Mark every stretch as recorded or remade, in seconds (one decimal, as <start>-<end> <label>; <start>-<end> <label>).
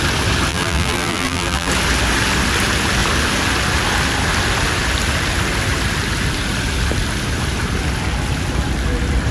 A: 0.0-0.5 recorded; 0.5-1.7 remade; 1.7-9.3 recorded